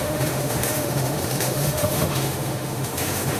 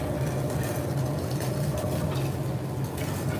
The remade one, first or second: first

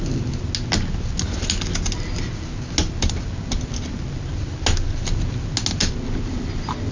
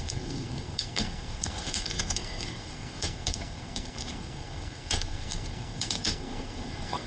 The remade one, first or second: second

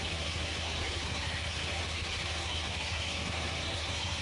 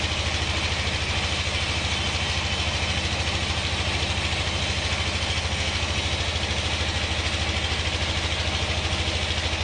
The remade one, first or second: first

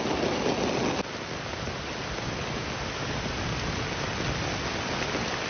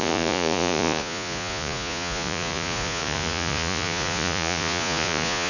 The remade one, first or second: second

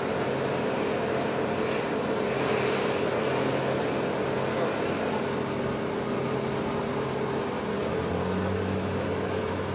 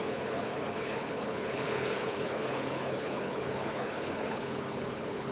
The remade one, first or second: second